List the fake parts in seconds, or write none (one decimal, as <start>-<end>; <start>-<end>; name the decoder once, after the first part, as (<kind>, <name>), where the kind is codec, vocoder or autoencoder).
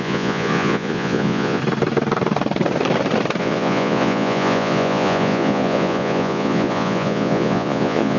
0.0-1.6 (vocoder, Vocos); 3.4-8.2